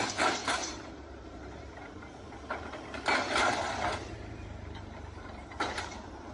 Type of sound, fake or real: fake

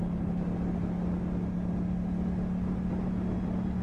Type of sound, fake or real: real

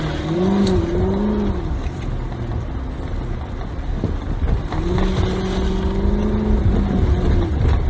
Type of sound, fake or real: real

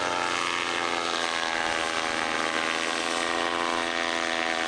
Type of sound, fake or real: real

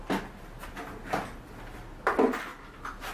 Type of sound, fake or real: real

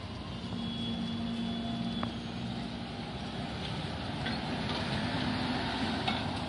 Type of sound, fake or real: real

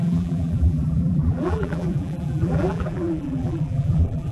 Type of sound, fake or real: fake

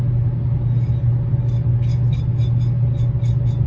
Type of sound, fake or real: real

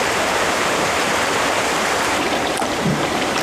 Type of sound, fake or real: fake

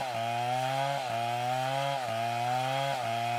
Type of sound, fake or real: real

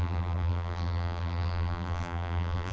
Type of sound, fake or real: fake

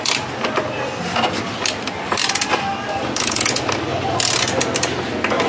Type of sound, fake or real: real